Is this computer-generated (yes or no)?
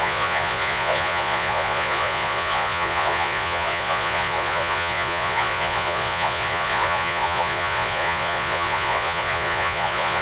yes